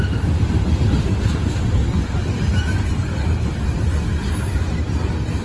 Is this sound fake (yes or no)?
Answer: no